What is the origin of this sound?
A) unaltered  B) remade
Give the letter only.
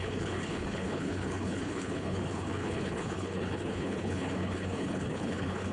B